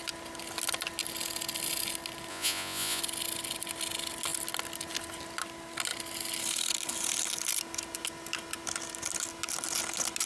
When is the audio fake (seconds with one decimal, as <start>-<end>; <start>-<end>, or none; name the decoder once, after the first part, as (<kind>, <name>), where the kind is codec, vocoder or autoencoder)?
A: 2.3-3.0 (vocoder, Vocos)